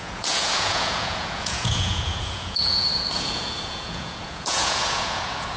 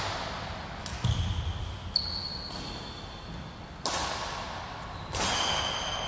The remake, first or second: first